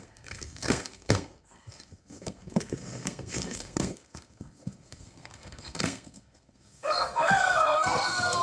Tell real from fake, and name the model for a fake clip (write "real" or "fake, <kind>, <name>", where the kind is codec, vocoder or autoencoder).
fake, codec, SNAC